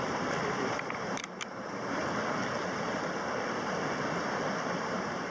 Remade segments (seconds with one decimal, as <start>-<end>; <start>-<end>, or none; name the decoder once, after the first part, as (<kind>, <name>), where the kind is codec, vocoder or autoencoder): 0.0-2.0 (vocoder, BigVGAN v2); 4.7-5.3

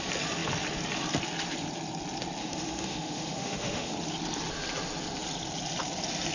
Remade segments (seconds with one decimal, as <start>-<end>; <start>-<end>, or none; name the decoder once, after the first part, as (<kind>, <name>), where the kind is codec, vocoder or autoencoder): 2.4-3.9 (autoencoder, DAC-VAE)

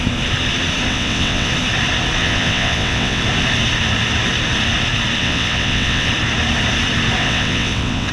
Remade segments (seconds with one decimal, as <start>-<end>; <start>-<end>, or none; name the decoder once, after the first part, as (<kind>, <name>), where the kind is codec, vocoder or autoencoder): 0.9-1.5 (vocoder, WaveNeXt); 2.2-3.2; 5.2-6.1; 7.2-8.1

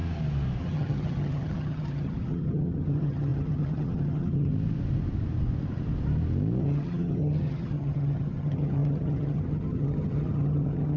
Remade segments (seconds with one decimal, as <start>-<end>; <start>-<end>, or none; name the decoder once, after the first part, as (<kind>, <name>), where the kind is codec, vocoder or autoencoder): 0.6-4.5 (vocoder, HiFi-GAN); 6.6-11.0